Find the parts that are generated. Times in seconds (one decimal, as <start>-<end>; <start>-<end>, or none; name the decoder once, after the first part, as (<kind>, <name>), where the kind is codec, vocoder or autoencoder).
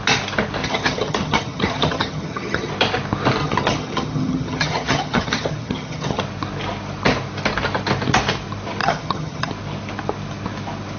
0.6-2.7 (vocoder, HiFi-GAN); 3.4-6.2; 8.8-9.5